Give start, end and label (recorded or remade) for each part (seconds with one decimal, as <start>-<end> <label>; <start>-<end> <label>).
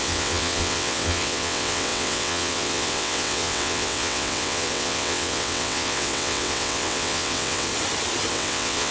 0.0-7.7 remade; 7.7-8.3 recorded; 8.3-8.9 remade